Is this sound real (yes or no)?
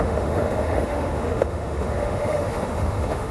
no